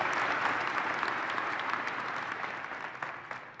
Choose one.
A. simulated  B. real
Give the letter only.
B